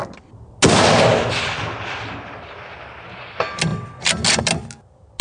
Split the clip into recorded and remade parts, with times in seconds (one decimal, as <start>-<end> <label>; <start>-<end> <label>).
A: 0.0-5.2 recorded